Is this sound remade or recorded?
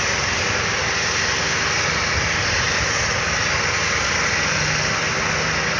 recorded